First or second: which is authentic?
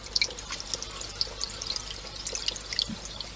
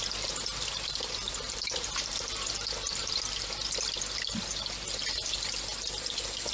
first